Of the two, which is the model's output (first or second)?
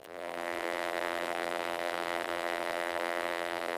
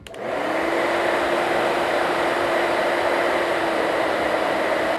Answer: first